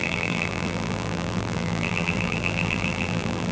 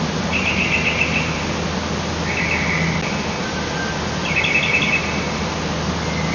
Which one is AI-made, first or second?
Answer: first